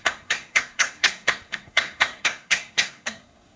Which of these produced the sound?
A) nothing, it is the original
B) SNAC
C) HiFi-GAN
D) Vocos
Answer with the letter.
B